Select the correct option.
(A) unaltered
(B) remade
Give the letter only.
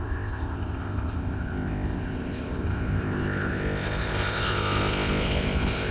B